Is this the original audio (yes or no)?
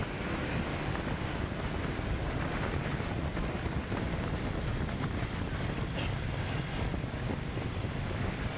yes